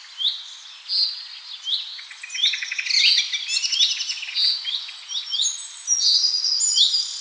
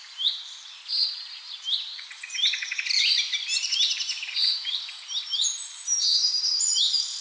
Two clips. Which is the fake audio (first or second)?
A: second